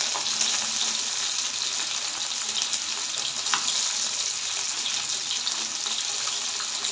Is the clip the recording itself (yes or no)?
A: yes